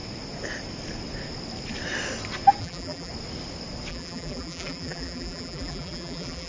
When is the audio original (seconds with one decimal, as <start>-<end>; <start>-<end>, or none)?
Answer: 0.0-2.6; 3.1-3.9